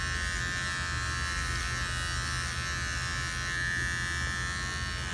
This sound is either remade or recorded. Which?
recorded